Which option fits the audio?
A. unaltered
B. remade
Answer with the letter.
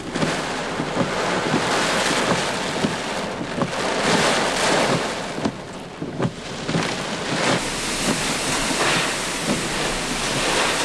A